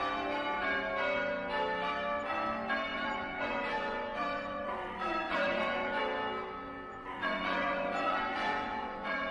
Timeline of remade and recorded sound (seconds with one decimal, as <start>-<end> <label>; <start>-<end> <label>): 0.0-2.9 recorded; 2.9-6.0 remade; 6.0-6.9 recorded; 6.9-9.3 remade